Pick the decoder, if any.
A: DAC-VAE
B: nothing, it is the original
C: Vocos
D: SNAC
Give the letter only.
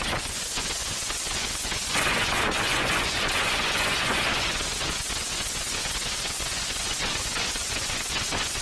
C